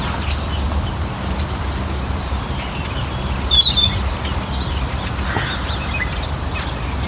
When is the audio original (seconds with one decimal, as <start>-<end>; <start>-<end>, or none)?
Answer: 0.0-7.1